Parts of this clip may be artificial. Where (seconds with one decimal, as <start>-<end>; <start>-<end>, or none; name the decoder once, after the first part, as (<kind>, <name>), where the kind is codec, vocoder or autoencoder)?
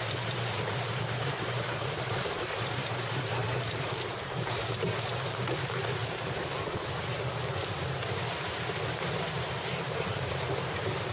0.0-6.0 (vocoder, BigVGAN v2); 7.6-11.1